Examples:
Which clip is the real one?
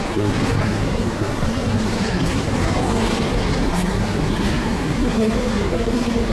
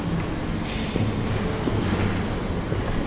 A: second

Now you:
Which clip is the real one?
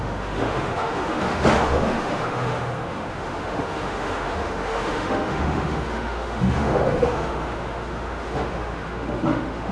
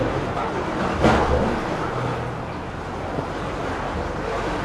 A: second